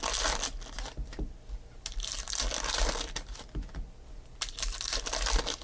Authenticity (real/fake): real